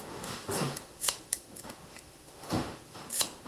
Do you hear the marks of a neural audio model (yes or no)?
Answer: yes